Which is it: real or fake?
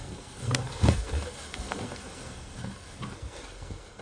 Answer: fake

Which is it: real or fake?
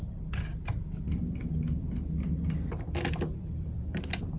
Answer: real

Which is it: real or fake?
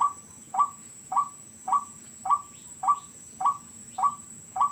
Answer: fake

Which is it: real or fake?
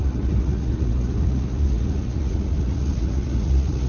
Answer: fake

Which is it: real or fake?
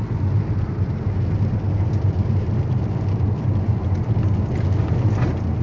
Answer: real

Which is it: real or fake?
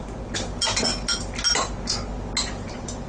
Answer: real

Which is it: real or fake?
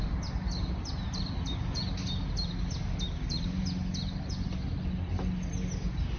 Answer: real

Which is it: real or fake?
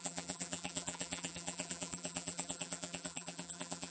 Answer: fake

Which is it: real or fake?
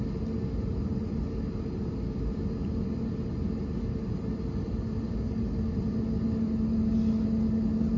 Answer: real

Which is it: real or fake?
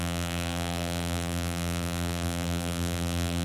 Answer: fake